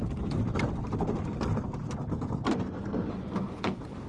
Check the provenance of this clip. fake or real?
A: fake